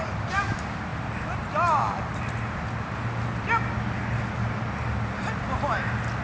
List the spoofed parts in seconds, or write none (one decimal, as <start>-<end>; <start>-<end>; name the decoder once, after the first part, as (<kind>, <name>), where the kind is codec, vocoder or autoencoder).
none